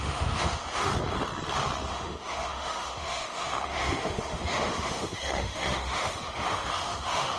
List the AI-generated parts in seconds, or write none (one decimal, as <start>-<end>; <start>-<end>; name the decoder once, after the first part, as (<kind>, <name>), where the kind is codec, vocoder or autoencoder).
0.0-0.9 (autoencoder, DAC-VAE); 1.9-7.4